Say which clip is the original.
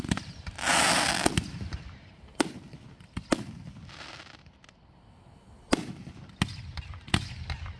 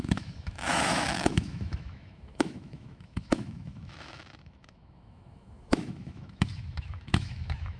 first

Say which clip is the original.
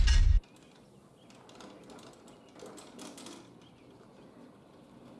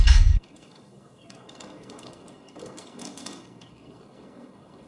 first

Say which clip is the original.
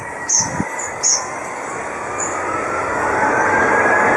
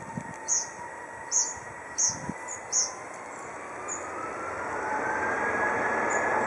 second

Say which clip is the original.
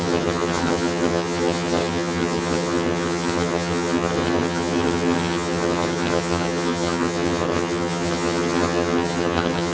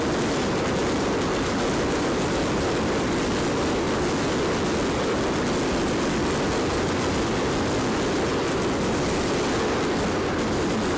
second